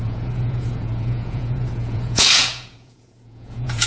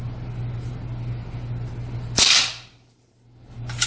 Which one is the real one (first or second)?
second